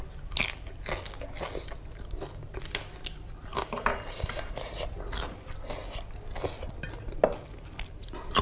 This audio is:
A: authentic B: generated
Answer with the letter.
A